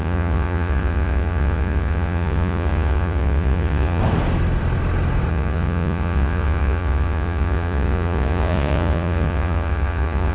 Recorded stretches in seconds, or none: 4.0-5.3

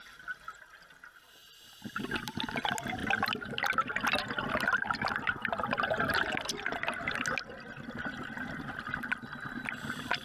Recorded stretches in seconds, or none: 0.0-10.2

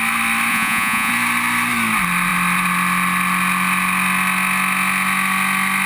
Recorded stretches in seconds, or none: 0.0-0.5; 1.1-5.9

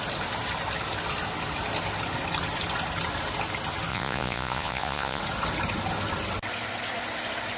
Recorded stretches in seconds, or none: 0.0-3.9; 5.2-7.6